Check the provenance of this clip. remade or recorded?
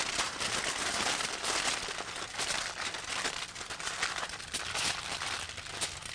recorded